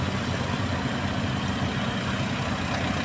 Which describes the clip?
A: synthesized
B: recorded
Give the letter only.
B